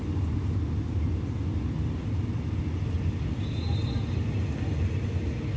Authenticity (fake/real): real